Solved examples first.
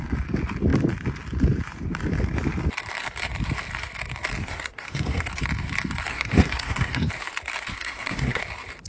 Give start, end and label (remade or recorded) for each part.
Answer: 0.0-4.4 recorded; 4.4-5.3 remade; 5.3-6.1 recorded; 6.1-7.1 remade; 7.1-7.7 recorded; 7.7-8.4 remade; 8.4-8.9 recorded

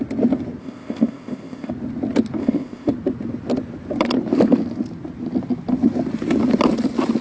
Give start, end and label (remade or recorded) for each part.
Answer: 0.0-0.6 recorded; 0.6-1.7 remade; 1.7-2.4 recorded; 2.4-2.9 remade; 2.9-7.2 recorded